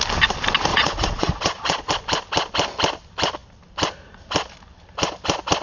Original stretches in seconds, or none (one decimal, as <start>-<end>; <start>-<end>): 0.0-0.7; 1.9-5.6